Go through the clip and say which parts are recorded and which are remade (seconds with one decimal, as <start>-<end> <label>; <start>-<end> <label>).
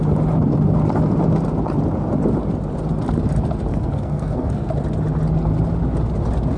0.0-3.7 recorded; 3.7-4.7 remade; 4.7-6.6 recorded